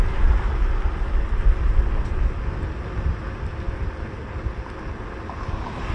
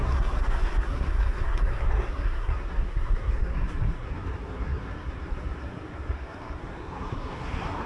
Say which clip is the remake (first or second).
second